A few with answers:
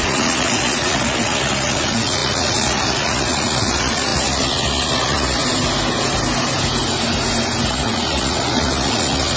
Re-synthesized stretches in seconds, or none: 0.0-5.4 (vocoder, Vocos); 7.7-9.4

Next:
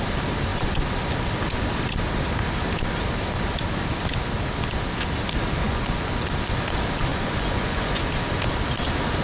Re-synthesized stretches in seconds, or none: 5.6-6.1 (vocoder, Vocos); 7.1-8.0

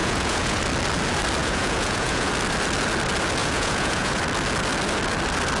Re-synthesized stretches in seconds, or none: 0.0-0.6 (vocoder, Vocos); 1.4-2.3; 3.4-4.2

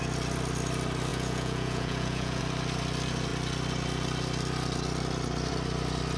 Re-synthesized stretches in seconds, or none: 1.1-2.4 (vocoder, Vocos)